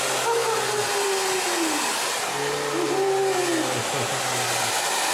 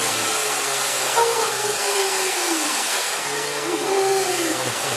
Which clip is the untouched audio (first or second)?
first